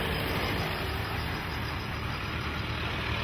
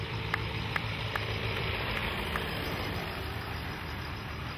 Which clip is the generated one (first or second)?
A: second